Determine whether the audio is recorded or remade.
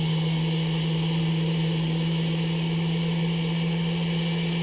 recorded